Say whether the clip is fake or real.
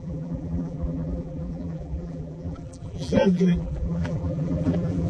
fake